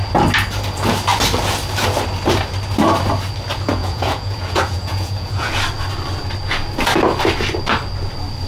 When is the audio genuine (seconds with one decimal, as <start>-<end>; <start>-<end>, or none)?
0.0-3.8; 5.5-8.5